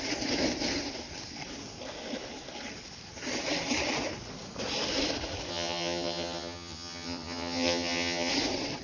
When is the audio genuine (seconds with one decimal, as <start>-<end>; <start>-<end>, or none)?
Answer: 0.0-5.5; 8.3-8.8